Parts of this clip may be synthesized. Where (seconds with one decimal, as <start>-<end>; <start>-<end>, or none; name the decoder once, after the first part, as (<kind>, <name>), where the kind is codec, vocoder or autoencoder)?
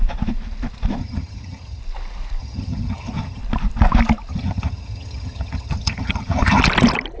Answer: 1.0-1.8 (vocoder, HiFi-GAN); 2.4-3.4; 4.3-6.6